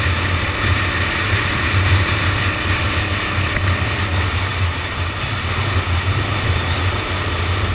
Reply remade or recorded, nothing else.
recorded